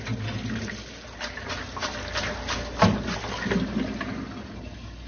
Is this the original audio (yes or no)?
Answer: yes